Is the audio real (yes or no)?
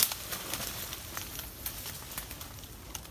no